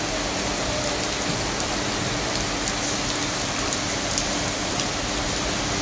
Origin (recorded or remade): recorded